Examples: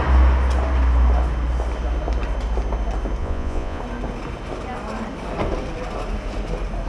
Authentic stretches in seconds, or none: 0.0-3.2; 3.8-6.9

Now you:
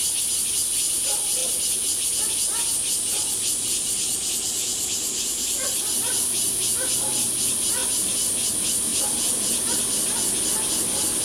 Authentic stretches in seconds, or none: 0.0-8.9; 9.8-11.2

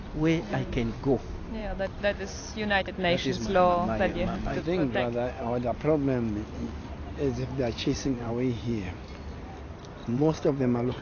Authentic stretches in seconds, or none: 0.0-7.8; 8.3-10.0; 10.6-11.0

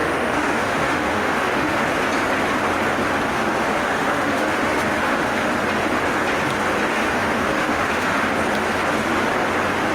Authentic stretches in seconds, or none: 1.8-3.3; 5.5-6.9; 8.2-9.9

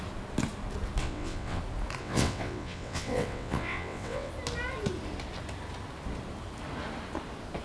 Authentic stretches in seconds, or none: 0.0-1.0; 1.6-2.0; 4.3-7.6

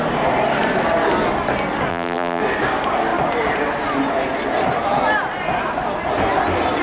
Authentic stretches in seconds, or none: 0.0-1.9; 2.4-6.8

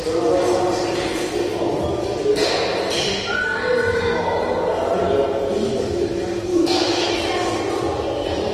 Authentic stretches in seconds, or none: 0.0-6.5; 7.6-8.5

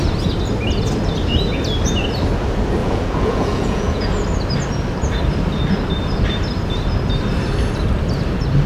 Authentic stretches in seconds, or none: 0.0-2.8; 4.0-8.7